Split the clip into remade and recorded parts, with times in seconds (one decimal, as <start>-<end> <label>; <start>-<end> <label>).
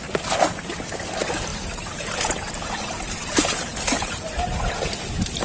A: 0.0-1.5 recorded; 1.5-4.7 remade; 4.7-5.4 recorded